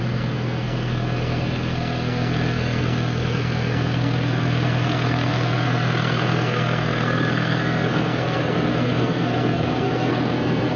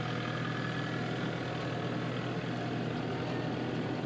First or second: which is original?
second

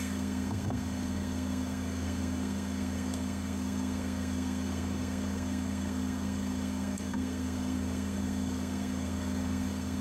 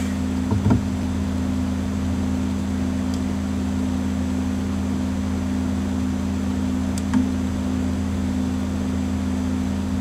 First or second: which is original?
second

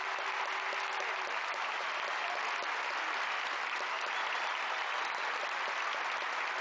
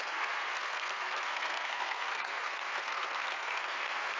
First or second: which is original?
first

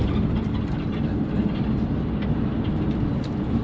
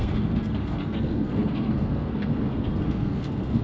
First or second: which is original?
first